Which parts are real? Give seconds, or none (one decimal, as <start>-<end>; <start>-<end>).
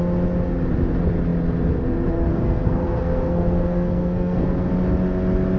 0.0-2.3; 4.7-5.6